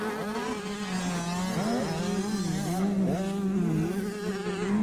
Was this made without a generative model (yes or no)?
yes